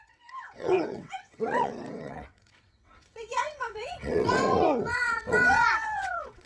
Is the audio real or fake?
fake